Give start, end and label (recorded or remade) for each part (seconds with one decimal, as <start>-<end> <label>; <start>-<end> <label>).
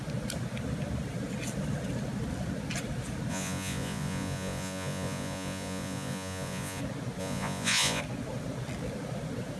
0.0-3.3 recorded; 3.3-6.8 remade; 6.8-7.2 recorded; 7.2-8.0 remade; 8.0-9.6 recorded